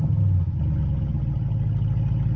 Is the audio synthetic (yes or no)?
no